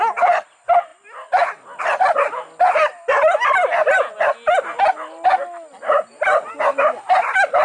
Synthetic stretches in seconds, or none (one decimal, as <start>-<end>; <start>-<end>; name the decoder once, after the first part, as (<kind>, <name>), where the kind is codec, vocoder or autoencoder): none